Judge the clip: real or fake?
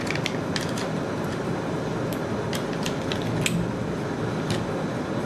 real